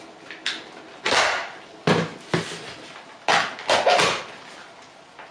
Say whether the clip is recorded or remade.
recorded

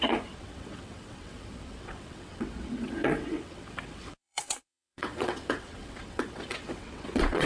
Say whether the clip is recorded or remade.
remade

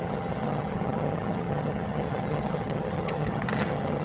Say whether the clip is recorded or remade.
remade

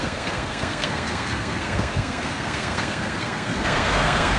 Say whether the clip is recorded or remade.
remade